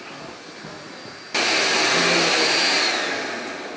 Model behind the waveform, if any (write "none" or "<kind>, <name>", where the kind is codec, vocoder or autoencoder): none